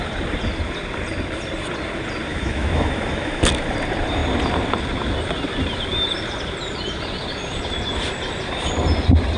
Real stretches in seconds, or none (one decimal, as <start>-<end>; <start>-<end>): 0.0-2.3; 3.4-9.4